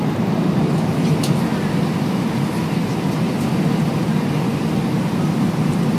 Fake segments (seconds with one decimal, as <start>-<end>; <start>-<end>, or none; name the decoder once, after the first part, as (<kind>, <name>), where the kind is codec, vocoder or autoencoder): none